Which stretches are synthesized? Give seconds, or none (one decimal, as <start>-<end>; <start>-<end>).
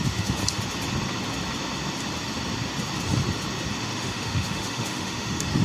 0.0-0.4; 3.8-5.6